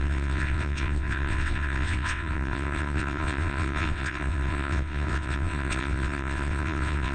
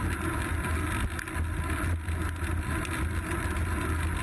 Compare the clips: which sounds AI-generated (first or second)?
first